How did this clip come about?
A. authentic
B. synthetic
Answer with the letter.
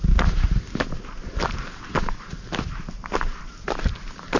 A